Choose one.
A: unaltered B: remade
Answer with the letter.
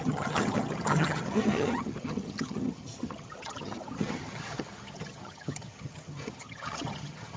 B